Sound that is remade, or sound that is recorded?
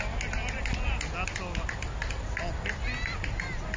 recorded